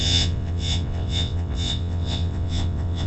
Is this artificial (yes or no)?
yes